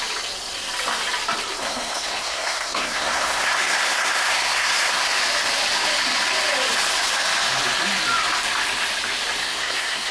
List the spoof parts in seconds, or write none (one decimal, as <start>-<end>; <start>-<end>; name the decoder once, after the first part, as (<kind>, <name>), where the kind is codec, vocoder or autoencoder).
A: 1.6-5.1 (codec, SNAC); 9.4-10.1